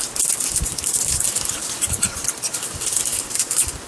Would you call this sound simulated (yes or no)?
no